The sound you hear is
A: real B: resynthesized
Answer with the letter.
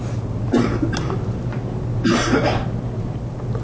A